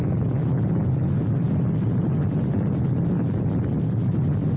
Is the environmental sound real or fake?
real